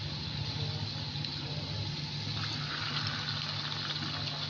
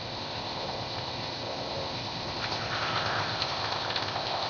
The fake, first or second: second